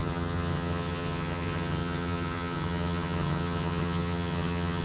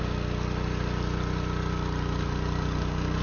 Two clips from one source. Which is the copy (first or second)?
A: first